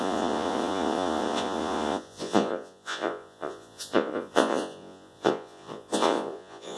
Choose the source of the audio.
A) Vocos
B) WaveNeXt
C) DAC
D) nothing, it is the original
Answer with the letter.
A